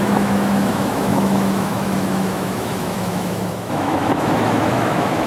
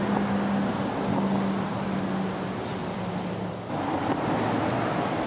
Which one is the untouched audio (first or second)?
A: second